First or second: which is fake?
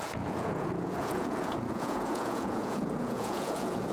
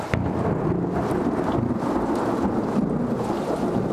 first